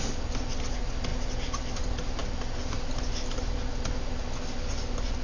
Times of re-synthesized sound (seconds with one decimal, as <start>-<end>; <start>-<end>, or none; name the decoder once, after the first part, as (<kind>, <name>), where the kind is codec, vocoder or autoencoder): none